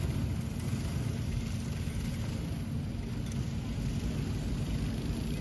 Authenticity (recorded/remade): recorded